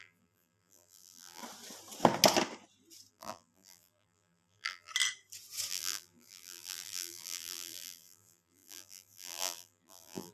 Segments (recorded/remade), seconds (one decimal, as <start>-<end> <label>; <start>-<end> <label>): 0.0-1.4 remade; 1.4-3.1 recorded; 3.1-4.9 remade; 4.9-5.7 recorded; 5.7-10.3 remade